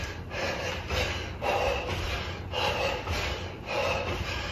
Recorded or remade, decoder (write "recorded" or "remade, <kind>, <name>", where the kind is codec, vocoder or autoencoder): recorded